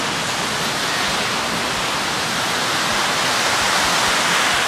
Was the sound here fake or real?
real